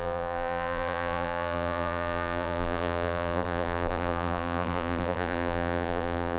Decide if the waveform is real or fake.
fake